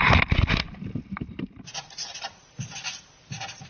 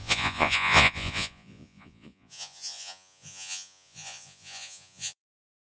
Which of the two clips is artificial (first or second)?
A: second